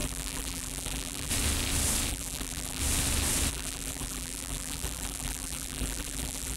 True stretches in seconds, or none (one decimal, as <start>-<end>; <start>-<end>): 1.3-2.1; 2.8-3.5